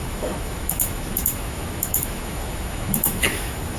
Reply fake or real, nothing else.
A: fake